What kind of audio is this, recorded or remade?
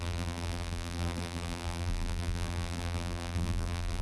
remade